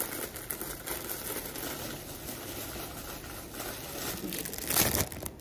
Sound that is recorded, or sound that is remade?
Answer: recorded